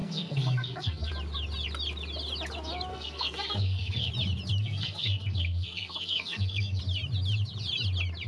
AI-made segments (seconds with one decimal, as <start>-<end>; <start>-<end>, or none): 0.0-1.1; 2.9-4.1; 4.6-6.8